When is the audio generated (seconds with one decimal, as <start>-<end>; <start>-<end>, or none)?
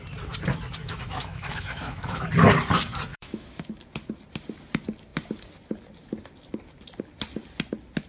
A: 0.8-2.3; 3.1-3.7